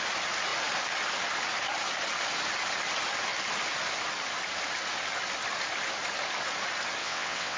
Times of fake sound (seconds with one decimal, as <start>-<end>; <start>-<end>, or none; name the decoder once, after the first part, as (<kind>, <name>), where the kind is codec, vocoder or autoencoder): 7.0-7.6 (vocoder, WaveNeXt)